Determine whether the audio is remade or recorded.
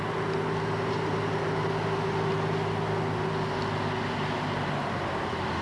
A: recorded